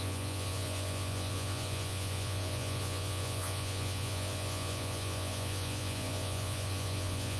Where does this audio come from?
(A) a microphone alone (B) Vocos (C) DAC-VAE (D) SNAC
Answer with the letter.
B